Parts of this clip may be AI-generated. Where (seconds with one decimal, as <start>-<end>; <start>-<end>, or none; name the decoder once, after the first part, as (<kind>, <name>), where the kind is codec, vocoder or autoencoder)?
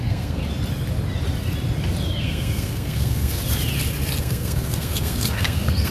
0.0-0.4 (codec, SNAC); 2.2-3.4; 4.2-5.9